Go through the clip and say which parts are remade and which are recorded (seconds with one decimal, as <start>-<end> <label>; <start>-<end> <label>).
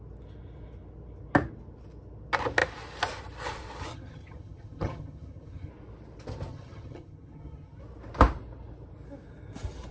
0.0-3.9 recorded; 3.9-5.7 remade; 5.7-6.5 recorded; 6.5-7.8 remade; 7.8-9.9 recorded